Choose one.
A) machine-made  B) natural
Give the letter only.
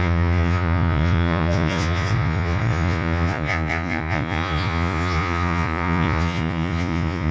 A